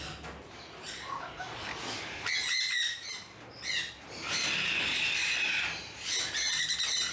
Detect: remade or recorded recorded